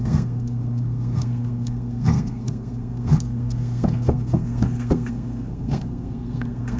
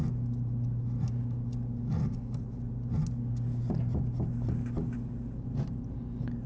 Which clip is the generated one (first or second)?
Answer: first